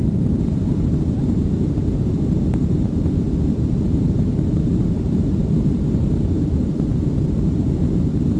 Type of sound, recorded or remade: remade